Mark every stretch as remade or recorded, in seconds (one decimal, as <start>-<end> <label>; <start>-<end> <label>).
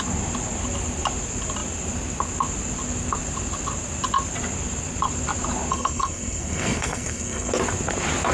0.0-5.7 recorded; 5.7-7.5 remade; 7.5-8.3 recorded